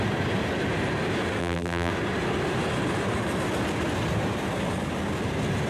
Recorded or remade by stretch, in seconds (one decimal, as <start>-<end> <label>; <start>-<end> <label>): 0.0-1.4 recorded; 1.4-1.9 remade; 1.9-5.7 recorded